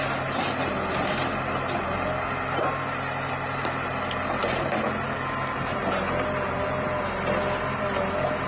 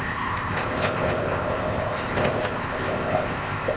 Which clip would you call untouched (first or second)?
first